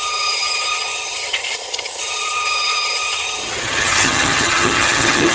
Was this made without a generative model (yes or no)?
no